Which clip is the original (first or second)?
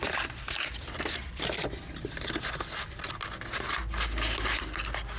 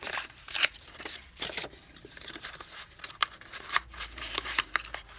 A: first